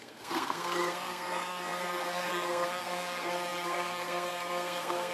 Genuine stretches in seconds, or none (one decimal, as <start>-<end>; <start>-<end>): none